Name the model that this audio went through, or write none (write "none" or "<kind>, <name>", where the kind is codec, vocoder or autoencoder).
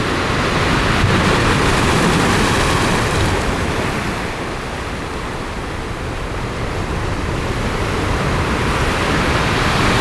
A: none